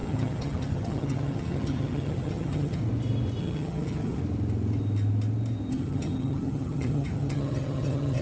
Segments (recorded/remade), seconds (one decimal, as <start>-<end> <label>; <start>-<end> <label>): 0.0-2.8 remade; 2.8-3.4 recorded; 3.4-4.2 remade; 4.2-5.7 recorded; 5.7-8.2 remade